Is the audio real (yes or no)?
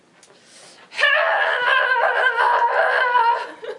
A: yes